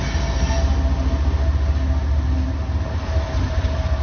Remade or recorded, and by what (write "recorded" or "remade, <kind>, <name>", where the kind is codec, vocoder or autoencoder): recorded